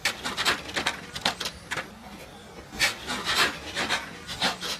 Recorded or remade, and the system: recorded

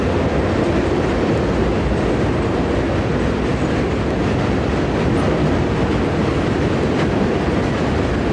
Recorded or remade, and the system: recorded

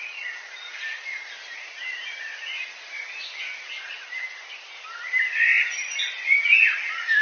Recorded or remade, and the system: recorded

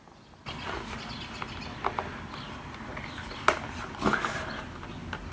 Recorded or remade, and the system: recorded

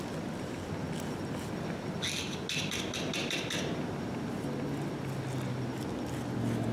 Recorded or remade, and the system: recorded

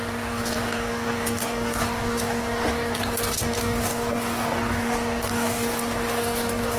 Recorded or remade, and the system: remade, codec, DAC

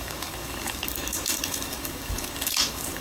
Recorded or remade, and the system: remade, codec, DAC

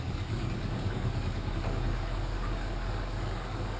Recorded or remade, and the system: remade, codec, DAC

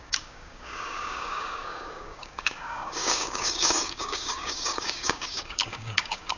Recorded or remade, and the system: remade, codec, DAC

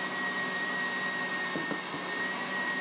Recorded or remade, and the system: recorded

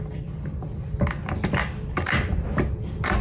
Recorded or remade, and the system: recorded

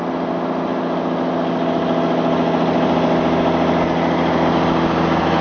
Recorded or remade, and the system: recorded